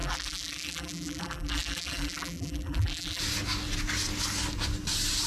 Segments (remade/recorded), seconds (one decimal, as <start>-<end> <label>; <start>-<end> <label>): 0.0-3.2 remade; 3.2-5.3 recorded